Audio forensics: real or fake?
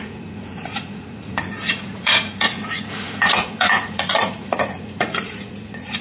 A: fake